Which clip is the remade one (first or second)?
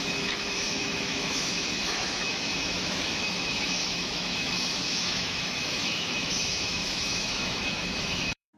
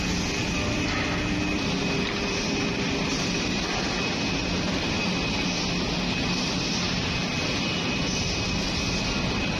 first